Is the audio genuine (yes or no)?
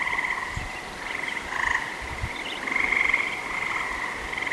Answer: no